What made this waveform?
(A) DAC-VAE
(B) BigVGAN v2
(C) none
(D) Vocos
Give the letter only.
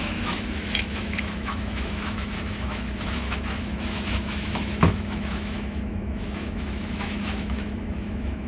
A